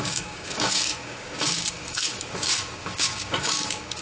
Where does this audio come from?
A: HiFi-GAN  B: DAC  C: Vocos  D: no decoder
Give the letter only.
B